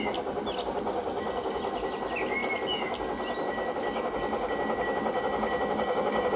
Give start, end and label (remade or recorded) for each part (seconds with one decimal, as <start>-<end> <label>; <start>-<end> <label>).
0.0-6.4 recorded